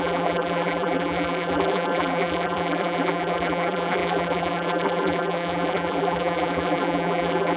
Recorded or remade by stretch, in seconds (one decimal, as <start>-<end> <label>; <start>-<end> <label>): 0.0-7.6 remade